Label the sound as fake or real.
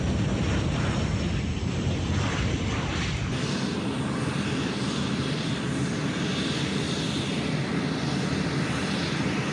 real